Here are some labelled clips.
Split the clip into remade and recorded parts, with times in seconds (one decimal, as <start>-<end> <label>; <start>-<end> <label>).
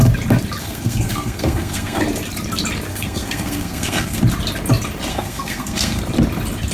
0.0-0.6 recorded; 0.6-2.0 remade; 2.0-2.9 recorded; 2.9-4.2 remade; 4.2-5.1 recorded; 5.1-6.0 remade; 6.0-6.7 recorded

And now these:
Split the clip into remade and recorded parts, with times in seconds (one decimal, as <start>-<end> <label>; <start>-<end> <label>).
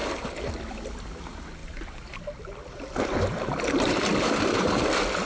0.0-5.3 recorded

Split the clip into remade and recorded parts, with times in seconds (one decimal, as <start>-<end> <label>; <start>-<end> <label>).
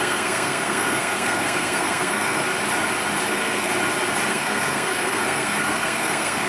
0.0-2.4 remade; 2.4-3.2 recorded; 3.2-3.7 remade; 3.7-4.3 recorded; 4.3-6.5 remade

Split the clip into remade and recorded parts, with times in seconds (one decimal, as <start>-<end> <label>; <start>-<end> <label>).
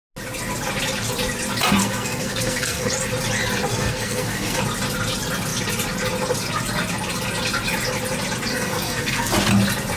0.0-1.8 recorded; 1.8-2.9 remade; 2.9-3.7 recorded; 3.7-4.6 remade; 4.6-8.5 recorded; 8.5-9.3 remade; 9.3-10.0 recorded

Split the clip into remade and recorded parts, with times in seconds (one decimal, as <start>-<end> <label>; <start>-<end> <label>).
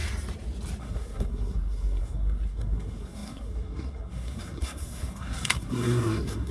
0.0-0.8 recorded; 0.8-6.5 remade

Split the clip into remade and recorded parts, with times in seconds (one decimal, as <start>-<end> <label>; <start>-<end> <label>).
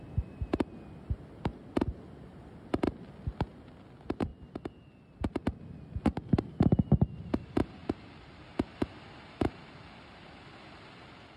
0.0-11.4 recorded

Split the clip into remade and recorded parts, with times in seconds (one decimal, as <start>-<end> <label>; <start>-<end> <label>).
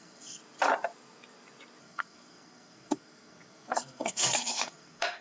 0.0-0.4 remade; 0.4-1.8 recorded; 1.8-5.2 remade